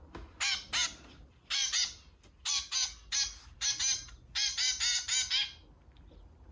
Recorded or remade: recorded